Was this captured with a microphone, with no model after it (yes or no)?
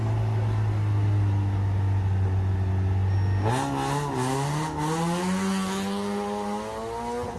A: yes